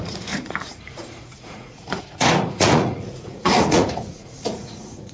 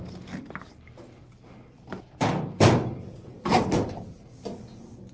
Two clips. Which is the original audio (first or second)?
second